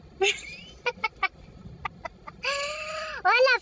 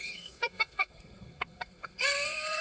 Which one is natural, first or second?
first